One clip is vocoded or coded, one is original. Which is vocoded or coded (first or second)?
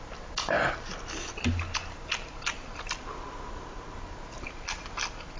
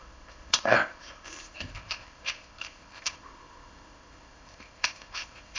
second